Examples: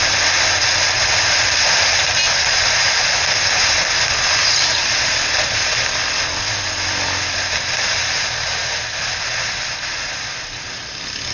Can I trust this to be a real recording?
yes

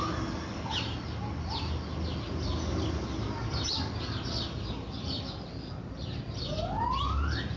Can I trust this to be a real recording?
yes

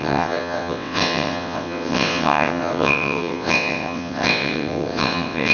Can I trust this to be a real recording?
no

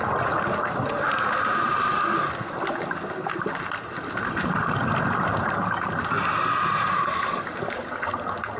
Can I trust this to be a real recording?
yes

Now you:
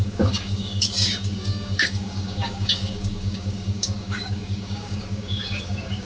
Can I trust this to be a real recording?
no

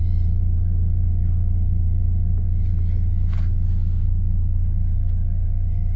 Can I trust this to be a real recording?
yes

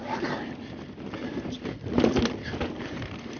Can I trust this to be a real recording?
yes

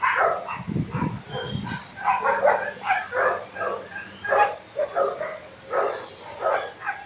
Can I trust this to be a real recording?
yes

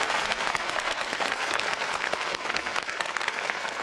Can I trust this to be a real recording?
no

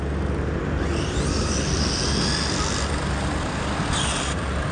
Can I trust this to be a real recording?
yes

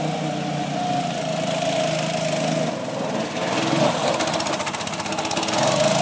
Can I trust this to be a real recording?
yes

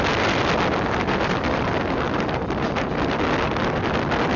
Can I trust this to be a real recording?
yes